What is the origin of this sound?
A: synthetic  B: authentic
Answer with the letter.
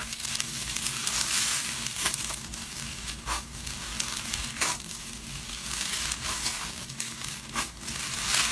A